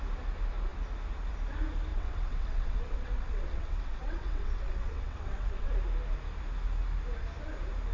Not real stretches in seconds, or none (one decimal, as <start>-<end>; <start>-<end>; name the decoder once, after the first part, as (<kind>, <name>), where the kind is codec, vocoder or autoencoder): 1.9-5.7 (vocoder, WaveNeXt)